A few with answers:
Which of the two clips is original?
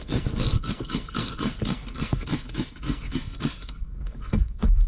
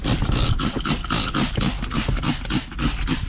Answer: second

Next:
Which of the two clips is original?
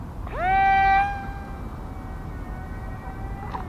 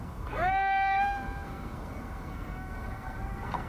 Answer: first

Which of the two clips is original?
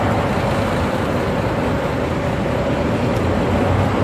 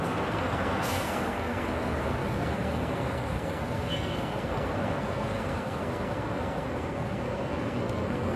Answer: first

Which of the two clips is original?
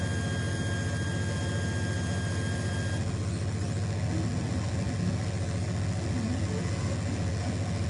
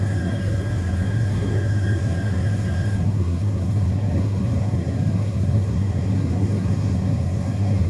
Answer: first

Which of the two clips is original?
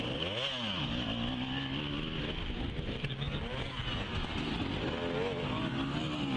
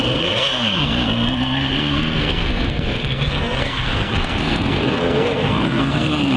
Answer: first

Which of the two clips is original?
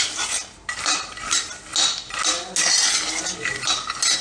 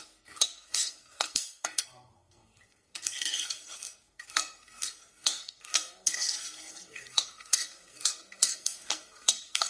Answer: first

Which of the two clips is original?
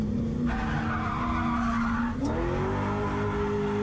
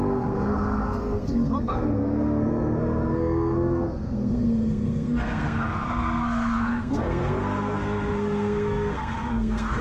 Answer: first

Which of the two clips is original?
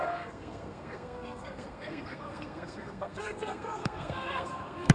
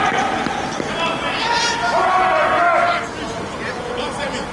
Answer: second